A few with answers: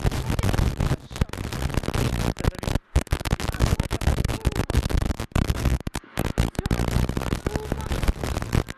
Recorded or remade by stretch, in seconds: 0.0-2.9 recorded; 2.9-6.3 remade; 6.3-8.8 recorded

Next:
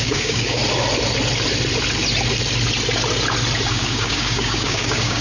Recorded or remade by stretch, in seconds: 0.0-0.6 remade; 0.6-3.7 recorded; 3.7-5.2 remade

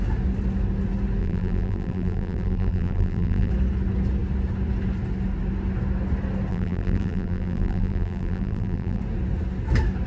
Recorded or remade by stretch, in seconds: 0.0-1.2 recorded; 1.2-3.5 remade; 3.5-6.5 recorded; 6.5-9.0 remade; 9.0-10.1 recorded

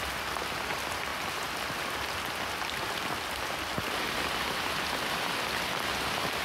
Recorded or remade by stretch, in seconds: 0.0-6.4 recorded

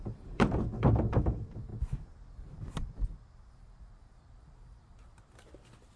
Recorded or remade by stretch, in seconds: 0.0-1.7 remade; 1.7-3.5 recorded; 3.5-6.0 remade

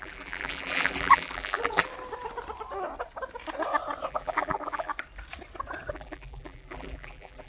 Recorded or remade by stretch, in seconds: 0.0-1.9 remade; 1.9-4.1 recorded; 4.1-4.9 remade; 4.9-5.9 recorded; 5.9-7.5 remade